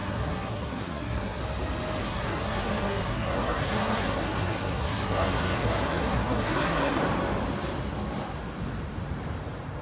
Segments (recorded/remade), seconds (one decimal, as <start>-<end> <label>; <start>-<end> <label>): 0.0-1.4 remade; 1.4-2.0 recorded; 2.0-7.0 remade; 7.0-9.8 recorded